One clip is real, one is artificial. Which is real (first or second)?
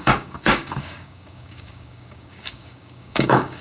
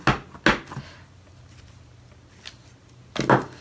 second